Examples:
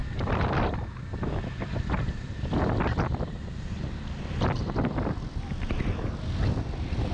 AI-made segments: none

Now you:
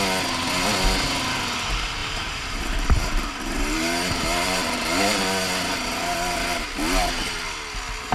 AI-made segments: 2.0-5.2 (vocoder, BigVGAN v2)

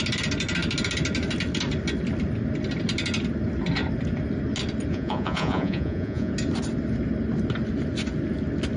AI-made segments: 4.9-6.3 (vocoder, Vocos)

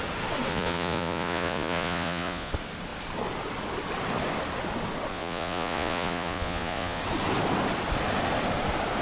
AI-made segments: 0.5-2.5 (vocoder, Vocos); 5.1-7.0

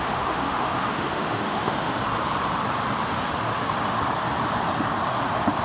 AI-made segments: 0.0-2.0 (autoencoder, DAC-VAE)

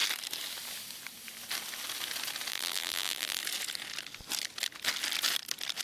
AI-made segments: 2.5-3.4 (vocoder, BigVGAN v2)